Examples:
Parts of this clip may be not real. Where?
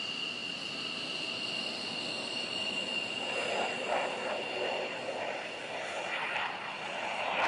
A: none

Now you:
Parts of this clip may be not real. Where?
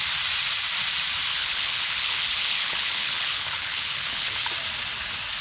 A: 1.3-4.5 (codec, HILCodec)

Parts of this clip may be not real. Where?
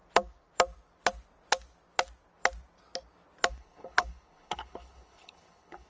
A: 3.5-5.9 (codec, HILCodec)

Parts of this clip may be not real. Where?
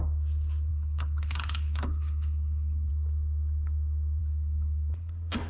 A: 0.7-2.9 (codec, HILCodec); 4.2-5.1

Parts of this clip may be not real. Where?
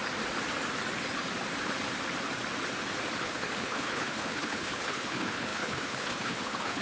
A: 3.2-6.8 (codec, HILCodec)